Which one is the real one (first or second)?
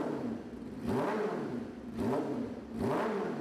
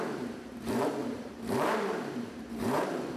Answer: first